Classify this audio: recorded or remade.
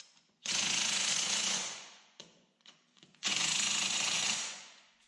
remade